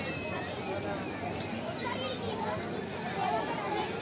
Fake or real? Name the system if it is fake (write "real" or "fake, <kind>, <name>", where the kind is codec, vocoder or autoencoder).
real